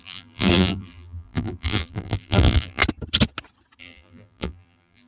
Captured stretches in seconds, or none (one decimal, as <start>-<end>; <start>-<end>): 2.8-3.8